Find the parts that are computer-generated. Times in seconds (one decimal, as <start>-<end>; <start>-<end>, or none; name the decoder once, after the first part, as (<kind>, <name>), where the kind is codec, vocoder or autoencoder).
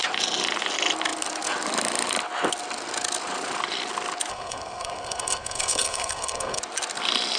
4.3-6.6 (codec, SNAC)